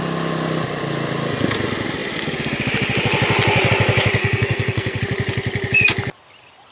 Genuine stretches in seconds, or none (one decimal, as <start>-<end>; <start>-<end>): 0.0-4.2; 5.0-6.7